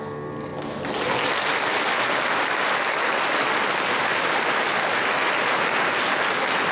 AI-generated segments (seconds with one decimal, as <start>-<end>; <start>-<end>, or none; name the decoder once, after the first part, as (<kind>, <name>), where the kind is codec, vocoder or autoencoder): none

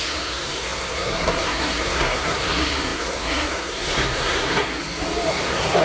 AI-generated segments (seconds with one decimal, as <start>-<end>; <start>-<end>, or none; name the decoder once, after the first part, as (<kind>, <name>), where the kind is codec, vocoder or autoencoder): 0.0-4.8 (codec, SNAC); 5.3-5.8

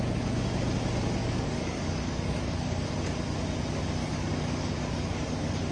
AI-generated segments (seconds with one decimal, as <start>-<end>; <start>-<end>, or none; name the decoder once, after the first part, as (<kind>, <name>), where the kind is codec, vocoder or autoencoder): 1.2-2.9 (codec, DAC); 4.0-5.7

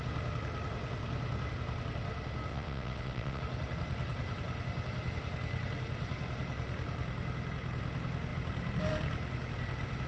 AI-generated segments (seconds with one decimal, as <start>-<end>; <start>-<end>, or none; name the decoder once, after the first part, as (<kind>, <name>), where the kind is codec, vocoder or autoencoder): 2.5-3.4 (vocoder, WaveNeXt)